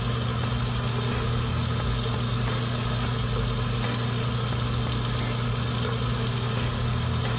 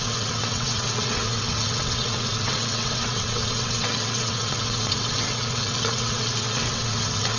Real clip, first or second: first